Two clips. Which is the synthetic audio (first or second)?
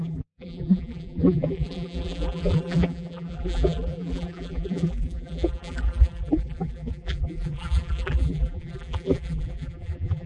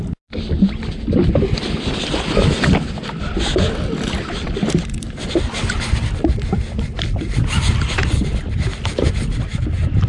first